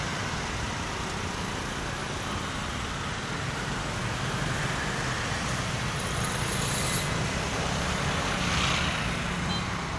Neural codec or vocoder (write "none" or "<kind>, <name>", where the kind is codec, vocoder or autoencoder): none